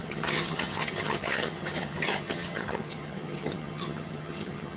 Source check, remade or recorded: remade